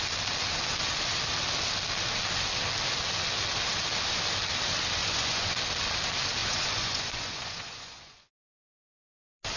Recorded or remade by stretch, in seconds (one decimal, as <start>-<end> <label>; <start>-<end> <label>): 0.0-5.0 recorded; 5.0-5.6 remade; 5.6-6.4 recorded; 6.4-9.0 remade; 9.0-9.6 recorded